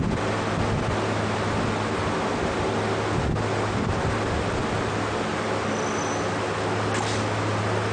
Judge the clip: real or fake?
real